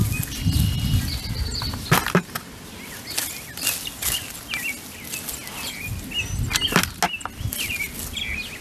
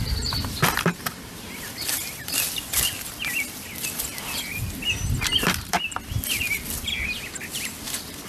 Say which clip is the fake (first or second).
second